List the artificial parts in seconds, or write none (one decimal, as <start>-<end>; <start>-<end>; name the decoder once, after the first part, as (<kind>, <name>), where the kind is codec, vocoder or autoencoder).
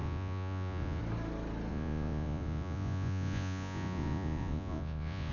0.0-1.0 (vocoder, Vocos); 1.7-5.3